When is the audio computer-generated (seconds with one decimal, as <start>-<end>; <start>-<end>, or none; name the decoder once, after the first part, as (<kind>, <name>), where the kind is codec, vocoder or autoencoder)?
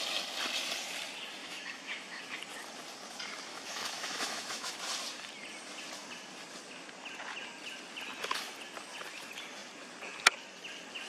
1.4-2.2 (autoencoder, DAC-VAE); 3.5-4.7